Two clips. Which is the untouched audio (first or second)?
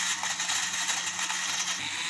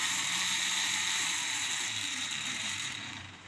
first